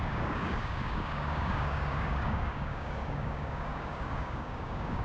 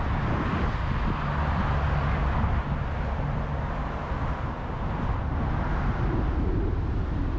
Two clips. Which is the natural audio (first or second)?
second